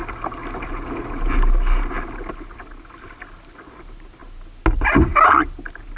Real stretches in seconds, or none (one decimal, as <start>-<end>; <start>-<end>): 0.0-6.0